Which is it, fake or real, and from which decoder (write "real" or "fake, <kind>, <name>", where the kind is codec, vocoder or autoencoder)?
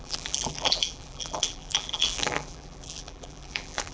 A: fake, vocoder, BigVGAN v2